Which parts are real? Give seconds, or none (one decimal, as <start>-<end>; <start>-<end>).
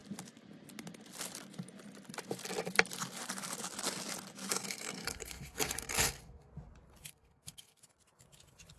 0.0-4.5; 6.5-7.1; 7.8-8.8